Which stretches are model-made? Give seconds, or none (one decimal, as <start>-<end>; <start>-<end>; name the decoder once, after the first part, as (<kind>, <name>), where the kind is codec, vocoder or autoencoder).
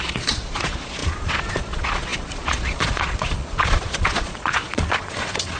0.0-5.6 (vocoder, Vocos)